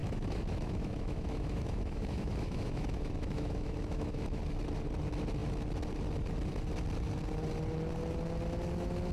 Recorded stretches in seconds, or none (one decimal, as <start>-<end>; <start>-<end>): 4.4-9.1